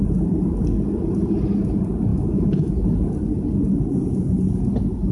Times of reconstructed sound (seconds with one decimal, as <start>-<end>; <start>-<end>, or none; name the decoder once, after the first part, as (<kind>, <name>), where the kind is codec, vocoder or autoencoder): 2.1-2.7 (autoencoder, DAC-VAE)